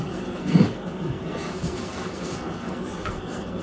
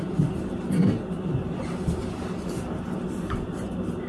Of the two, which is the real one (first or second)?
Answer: second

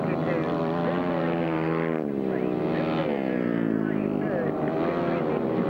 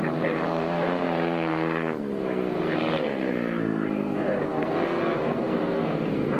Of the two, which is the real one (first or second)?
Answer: first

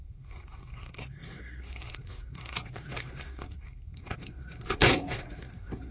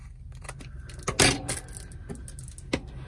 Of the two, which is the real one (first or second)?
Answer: second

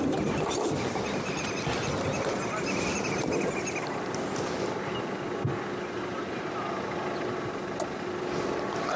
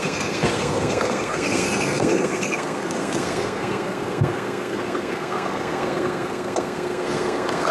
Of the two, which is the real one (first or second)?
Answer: first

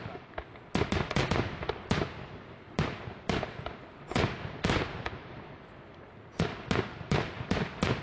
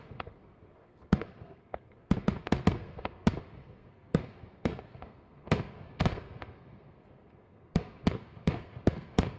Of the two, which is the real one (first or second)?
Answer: first